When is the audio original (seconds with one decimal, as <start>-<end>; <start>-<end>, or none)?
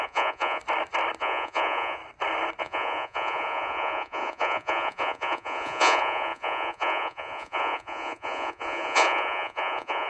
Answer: 0.6-1.2; 2.0-2.6